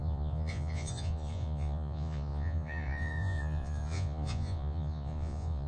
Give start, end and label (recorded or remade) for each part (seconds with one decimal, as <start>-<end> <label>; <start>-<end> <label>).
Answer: 0.0-5.7 remade